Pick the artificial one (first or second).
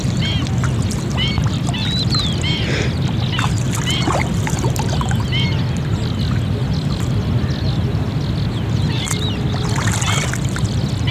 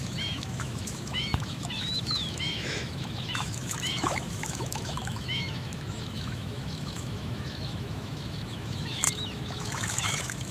second